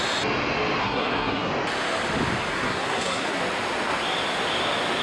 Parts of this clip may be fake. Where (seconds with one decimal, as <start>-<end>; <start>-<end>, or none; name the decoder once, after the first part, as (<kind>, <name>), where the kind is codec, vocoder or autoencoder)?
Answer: 0.8-1.5 (codec, SNAC); 2.5-3.4